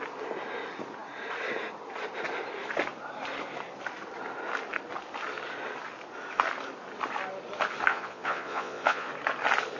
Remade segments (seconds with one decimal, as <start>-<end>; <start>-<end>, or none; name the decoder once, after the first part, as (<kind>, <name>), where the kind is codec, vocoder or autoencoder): 7.9-9.1 (vocoder, Vocos)